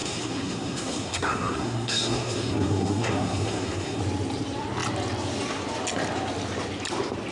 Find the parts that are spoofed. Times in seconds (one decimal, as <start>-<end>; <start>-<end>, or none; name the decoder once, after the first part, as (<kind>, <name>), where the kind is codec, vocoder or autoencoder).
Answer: 0.0-4.0 (codec, SNAC)